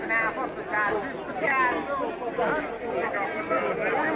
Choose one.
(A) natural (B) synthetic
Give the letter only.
A